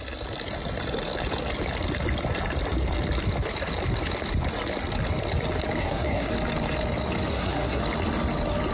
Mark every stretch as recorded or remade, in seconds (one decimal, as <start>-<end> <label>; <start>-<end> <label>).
0.0-5.8 recorded; 5.8-6.3 remade; 6.3-7.3 recorded; 7.3-7.8 remade; 7.8-8.7 recorded